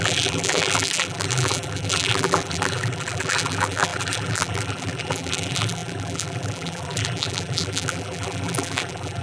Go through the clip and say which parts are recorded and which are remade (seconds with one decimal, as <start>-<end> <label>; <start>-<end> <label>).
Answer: 0.0-9.2 remade